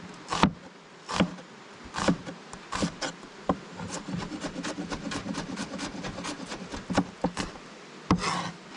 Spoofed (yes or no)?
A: no